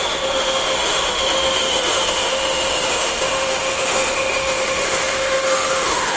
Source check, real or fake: fake